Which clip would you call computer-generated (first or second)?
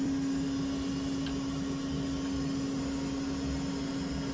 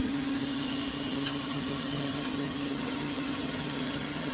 second